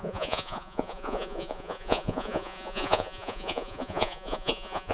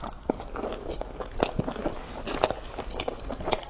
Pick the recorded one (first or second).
second